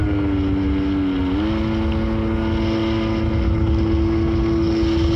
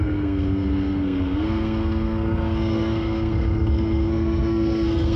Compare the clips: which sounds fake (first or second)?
second